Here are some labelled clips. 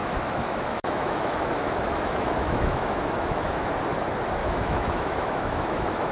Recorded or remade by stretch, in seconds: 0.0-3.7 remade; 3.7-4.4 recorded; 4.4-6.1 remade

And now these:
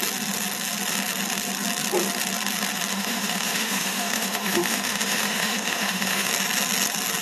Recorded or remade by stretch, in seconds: 0.0-2.9 recorded; 2.9-6.3 remade; 6.3-7.2 recorded

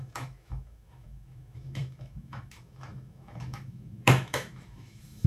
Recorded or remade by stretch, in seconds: 0.0-5.3 remade

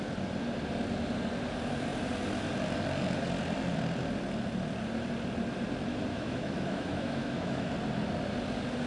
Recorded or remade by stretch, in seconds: 0.0-6.1 recorded; 6.1-7.7 remade; 7.7-8.9 recorded

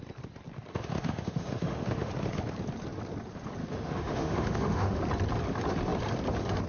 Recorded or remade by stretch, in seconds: 0.0-0.7 recorded; 0.7-2.1 remade; 2.1-3.6 recorded; 3.6-5.0 remade; 5.0-6.7 recorded

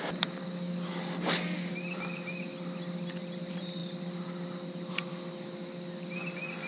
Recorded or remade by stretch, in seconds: 0.0-6.7 recorded

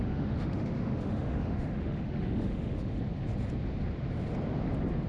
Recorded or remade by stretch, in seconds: 0.0-3.0 remade; 3.0-5.1 recorded

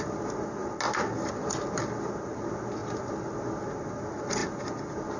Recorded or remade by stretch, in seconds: 0.0-5.2 recorded